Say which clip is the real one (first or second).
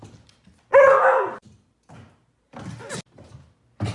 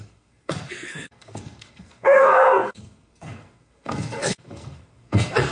first